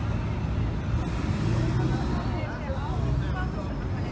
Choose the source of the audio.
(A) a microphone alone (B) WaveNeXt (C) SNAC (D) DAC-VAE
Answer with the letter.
A